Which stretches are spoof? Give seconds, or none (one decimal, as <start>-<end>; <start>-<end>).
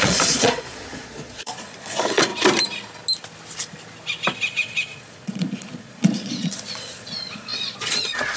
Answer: 0.0-2.3; 4.5-8.4